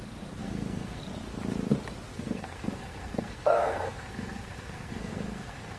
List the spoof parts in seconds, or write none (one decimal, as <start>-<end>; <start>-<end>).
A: 0.4-1.0; 2.1-5.8